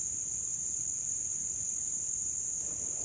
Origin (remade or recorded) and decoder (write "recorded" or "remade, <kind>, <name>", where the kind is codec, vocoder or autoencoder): recorded